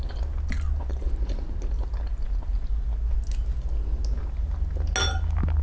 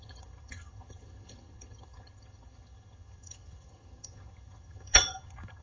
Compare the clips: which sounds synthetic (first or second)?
second